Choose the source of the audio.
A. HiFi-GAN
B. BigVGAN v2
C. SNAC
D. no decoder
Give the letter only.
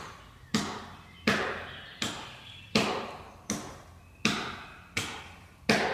D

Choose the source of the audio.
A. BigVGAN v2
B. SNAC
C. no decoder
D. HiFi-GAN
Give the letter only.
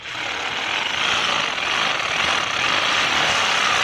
C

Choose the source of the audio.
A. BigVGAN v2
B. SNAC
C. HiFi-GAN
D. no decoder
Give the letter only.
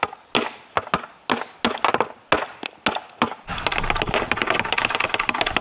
D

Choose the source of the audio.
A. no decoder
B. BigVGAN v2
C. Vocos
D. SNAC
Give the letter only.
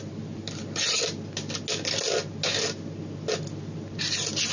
A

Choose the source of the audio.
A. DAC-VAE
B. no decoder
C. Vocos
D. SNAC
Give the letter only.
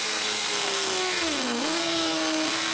D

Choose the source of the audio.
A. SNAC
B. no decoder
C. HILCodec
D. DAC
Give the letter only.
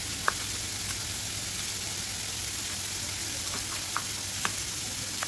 B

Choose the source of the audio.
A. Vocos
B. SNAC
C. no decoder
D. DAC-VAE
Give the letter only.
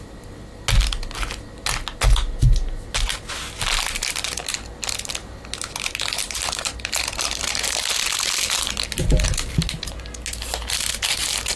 C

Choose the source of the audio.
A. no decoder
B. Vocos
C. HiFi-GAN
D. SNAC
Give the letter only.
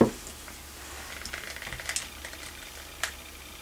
A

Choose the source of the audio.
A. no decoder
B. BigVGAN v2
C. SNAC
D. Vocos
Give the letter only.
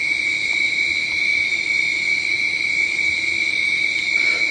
A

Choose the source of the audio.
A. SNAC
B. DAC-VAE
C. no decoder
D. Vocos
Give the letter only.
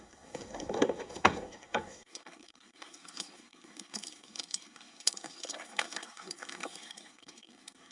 A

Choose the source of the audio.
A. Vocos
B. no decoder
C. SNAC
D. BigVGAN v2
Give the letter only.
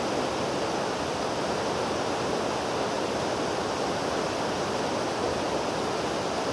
B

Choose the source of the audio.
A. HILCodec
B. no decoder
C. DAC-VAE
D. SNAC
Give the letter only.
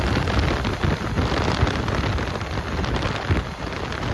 B